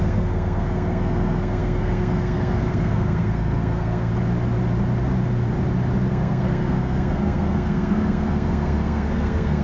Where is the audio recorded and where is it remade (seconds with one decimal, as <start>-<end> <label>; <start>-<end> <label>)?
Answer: 0.0-4.1 remade; 4.1-6.1 recorded; 6.1-9.6 remade